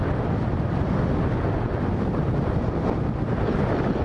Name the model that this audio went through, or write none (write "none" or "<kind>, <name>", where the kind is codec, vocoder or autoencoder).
none